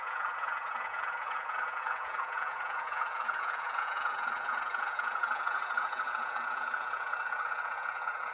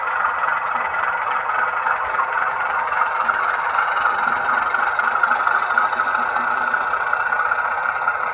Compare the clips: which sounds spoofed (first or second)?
first